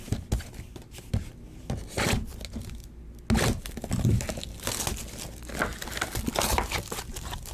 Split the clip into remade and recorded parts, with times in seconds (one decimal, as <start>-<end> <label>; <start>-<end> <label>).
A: 0.0-7.5 recorded